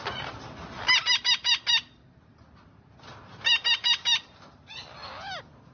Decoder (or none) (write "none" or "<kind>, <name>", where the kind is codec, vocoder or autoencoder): none